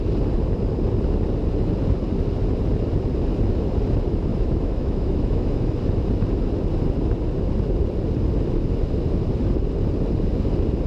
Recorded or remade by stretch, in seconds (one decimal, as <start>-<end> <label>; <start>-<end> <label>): 0.0-4.3 recorded; 4.3-5.8 remade; 5.8-10.9 recorded